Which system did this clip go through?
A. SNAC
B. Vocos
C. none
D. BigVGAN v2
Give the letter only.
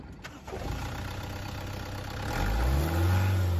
C